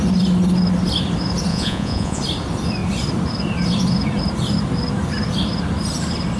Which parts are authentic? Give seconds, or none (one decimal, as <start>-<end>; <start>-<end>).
0.0-1.5; 2.2-6.4